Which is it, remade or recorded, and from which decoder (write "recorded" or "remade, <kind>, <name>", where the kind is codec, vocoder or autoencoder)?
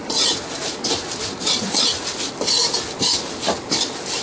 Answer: recorded